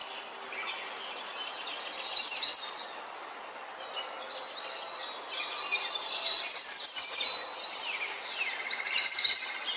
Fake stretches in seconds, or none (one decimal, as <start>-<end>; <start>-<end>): 5.7-6.6